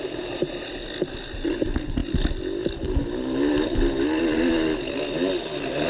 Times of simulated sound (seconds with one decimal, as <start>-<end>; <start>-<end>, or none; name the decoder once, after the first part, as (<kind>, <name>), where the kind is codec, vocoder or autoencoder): none